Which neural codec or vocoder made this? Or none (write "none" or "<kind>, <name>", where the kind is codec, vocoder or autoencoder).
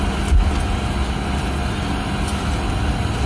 none